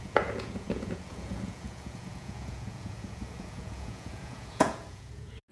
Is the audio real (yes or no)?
no